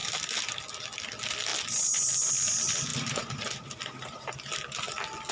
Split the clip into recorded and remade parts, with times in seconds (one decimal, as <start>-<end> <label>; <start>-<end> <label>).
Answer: 0.0-0.6 remade; 0.6-2.9 recorded; 2.9-4.5 remade; 4.5-5.3 recorded